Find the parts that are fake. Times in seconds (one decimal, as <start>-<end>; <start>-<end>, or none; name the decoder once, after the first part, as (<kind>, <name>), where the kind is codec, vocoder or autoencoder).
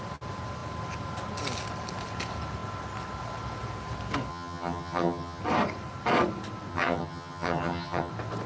4.3-5.4 (vocoder, HiFi-GAN); 6.7-8.1